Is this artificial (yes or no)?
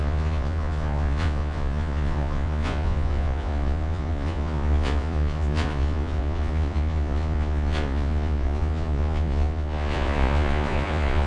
yes